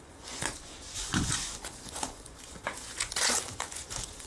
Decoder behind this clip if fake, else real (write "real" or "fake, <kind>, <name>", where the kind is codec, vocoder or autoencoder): fake, vocoder, Vocos